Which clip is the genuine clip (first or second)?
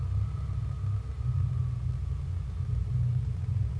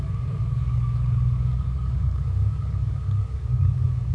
first